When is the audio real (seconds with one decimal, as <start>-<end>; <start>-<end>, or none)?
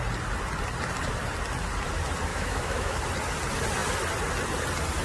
0.0-2.3; 3.0-5.0